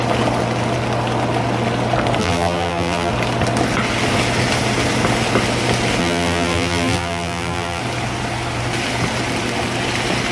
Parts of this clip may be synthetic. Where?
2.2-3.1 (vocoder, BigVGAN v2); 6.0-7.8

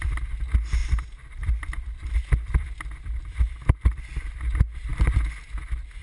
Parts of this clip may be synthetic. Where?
0.8-4.4 (vocoder, BigVGAN v2)

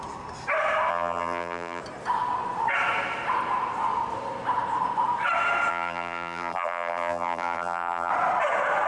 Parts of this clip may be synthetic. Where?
0.9-1.8 (vocoder, BigVGAN v2); 5.7-8.1